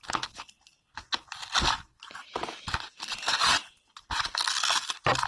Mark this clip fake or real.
real